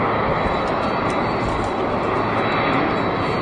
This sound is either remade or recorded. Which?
recorded